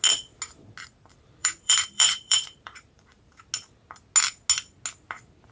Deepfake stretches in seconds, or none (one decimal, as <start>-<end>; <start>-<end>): 1.4-3.5